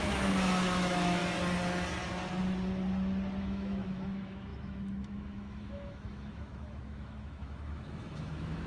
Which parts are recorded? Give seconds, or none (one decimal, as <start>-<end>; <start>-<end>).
1.2-3.4